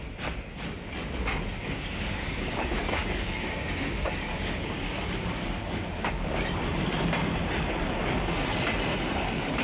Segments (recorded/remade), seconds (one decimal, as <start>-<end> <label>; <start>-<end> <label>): 0.0-1.5 recorded; 1.5-4.9 remade; 4.9-9.6 recorded